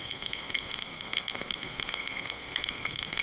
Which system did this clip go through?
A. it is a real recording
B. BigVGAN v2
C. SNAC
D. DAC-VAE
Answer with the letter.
C